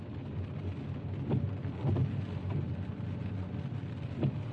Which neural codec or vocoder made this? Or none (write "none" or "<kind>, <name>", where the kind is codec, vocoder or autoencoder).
none